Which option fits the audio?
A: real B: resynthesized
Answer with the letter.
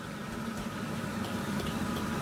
A